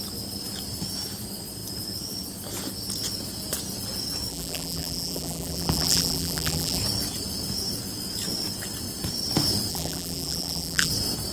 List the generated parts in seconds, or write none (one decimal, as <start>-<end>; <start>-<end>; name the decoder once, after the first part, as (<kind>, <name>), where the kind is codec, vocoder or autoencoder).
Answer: 4.3-6.8 (vocoder, BigVGAN v2); 9.7-10.9